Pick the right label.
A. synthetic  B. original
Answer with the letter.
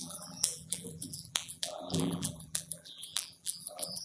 A